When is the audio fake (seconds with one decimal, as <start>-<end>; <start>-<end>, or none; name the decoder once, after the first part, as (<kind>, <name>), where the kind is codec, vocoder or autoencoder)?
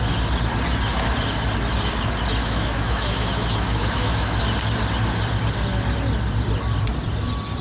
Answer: 2.4-4.4 (autoencoder, DAC-VAE)